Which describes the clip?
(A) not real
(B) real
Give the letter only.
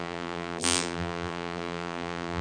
A